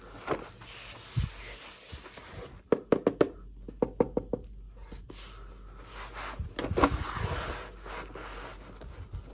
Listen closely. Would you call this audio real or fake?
real